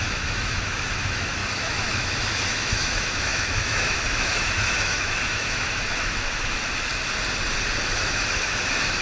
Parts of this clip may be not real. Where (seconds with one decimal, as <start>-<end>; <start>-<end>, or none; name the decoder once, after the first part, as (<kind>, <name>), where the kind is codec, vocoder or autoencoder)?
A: 0.0-6.9 (autoencoder, DAC-VAE); 7.9-9.0